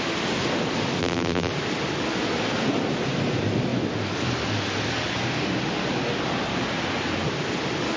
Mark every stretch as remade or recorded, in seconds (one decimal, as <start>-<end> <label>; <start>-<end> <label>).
0.0-1.0 recorded; 1.0-1.5 remade; 1.5-8.0 recorded